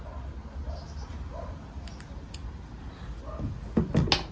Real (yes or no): yes